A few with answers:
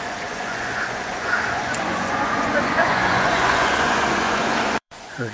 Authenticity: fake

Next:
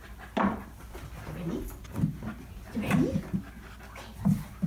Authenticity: real